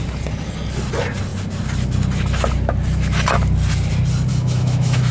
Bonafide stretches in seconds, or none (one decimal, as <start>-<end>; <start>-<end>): 0.0-4.3